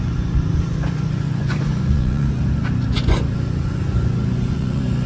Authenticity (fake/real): fake